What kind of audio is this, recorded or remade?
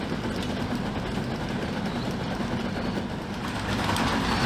recorded